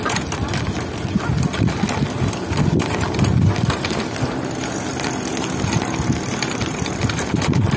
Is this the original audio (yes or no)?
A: yes